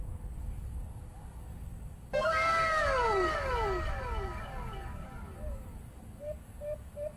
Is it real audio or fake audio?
fake